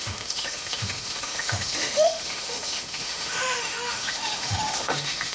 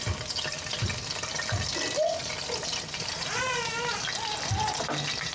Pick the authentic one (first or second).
second